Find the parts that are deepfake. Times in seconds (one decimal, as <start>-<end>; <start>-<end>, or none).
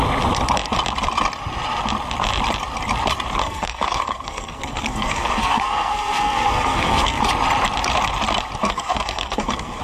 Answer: 3.4-7.2; 8.6-9.8